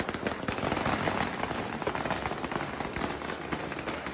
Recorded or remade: recorded